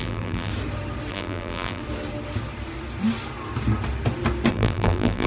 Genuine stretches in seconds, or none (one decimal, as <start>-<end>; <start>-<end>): 0.5-1.1; 1.8-4.5